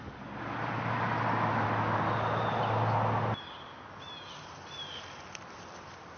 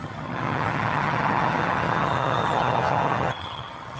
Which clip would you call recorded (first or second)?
first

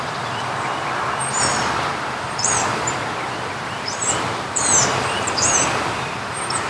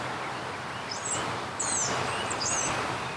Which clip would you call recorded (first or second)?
second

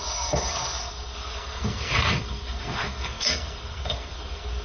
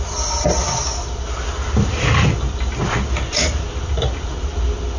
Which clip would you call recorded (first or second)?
second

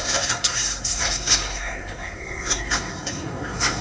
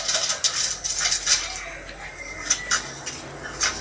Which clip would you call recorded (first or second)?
second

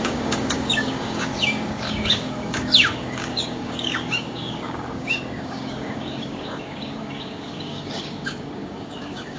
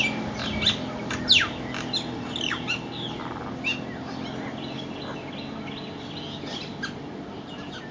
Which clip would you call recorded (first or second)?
second